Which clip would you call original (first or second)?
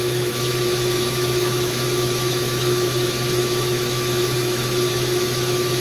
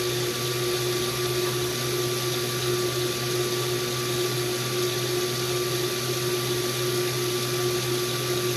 second